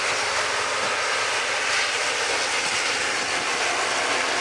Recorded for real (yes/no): yes